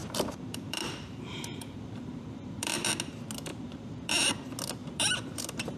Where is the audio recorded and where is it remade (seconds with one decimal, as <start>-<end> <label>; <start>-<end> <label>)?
0.0-2.9 remade; 2.9-3.5 recorded; 3.5-4.3 remade; 4.3-4.8 recorded; 4.8-5.8 remade